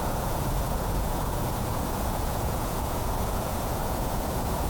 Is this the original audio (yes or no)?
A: no